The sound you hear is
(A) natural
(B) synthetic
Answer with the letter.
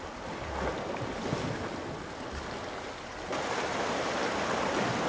A